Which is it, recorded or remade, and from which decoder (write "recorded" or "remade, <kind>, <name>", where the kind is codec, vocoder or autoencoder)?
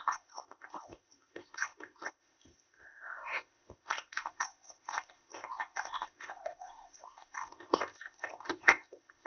remade, codec, ZipCodec